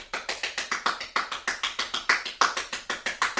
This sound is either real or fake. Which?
real